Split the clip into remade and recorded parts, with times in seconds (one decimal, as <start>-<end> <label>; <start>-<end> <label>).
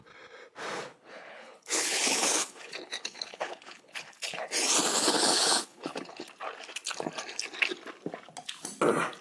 0.0-0.9 recorded; 0.9-4.5 remade; 4.5-4.9 recorded; 4.9-6.3 remade; 6.3-9.2 recorded